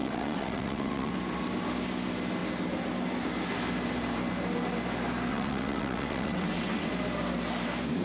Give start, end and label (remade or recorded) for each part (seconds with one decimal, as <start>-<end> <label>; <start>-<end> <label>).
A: 0.0-1.1 remade; 1.1-5.3 recorded; 5.3-6.9 remade; 6.9-8.0 recorded